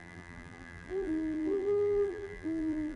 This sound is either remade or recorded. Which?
remade